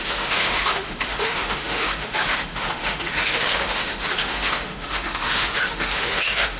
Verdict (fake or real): fake